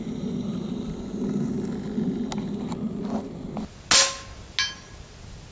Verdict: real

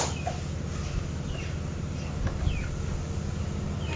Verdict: real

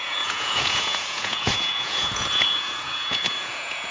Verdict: fake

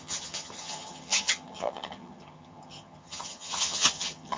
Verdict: fake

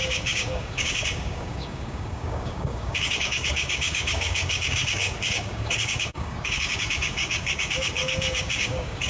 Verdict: fake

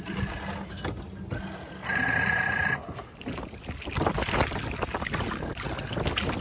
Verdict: real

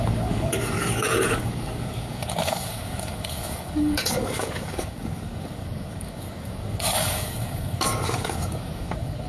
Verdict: fake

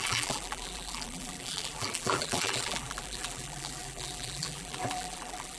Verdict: fake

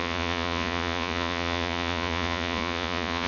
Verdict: fake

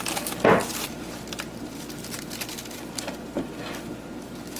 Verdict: real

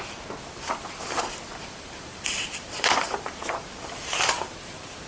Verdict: fake